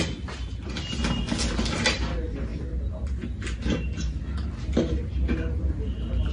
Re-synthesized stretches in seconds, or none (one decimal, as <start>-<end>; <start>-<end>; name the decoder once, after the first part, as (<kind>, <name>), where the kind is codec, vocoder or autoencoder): none